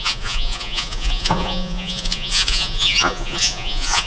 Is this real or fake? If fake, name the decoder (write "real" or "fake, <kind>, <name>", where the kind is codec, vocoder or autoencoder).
fake, vocoder, Vocos